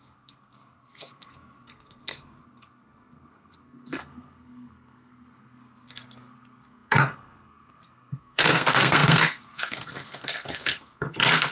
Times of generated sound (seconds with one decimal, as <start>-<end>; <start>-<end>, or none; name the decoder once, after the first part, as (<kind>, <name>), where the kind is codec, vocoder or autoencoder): 0.0-11.5 (codec, SNAC)

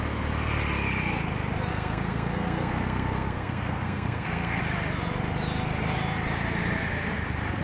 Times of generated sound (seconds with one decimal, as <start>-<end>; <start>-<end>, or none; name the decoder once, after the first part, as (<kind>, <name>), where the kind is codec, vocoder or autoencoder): 1.7-4.6 (codec, SNAC)

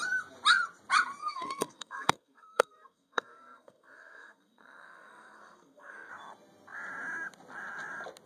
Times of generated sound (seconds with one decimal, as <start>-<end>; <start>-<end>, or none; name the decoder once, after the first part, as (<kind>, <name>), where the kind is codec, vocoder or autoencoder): 1.2-6.1 (codec, SNAC)

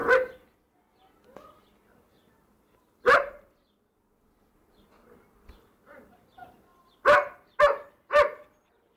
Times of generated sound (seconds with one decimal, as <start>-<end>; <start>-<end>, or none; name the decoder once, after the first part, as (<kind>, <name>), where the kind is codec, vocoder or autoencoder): none